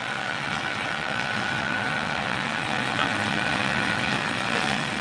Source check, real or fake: fake